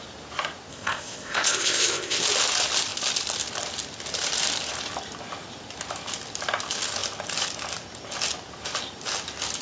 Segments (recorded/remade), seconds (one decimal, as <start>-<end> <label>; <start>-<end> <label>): 0.0-0.7 recorded; 0.7-2.2 remade; 2.2-9.6 recorded